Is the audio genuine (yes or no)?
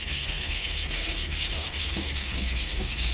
no